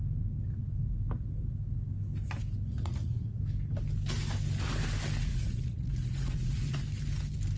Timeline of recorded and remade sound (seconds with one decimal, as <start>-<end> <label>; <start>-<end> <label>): 0.0-2.7 recorded; 2.7-3.4 remade; 3.4-5.3 recorded; 5.3-6.8 remade; 6.8-7.6 recorded